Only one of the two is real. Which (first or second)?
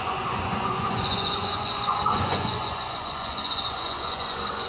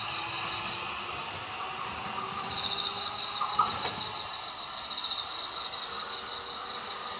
second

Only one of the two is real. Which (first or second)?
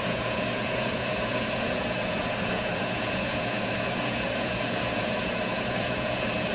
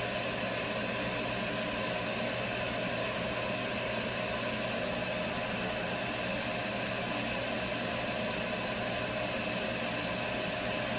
second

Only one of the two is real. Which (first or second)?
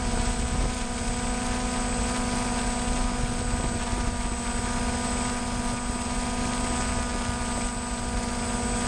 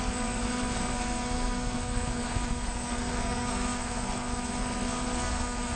first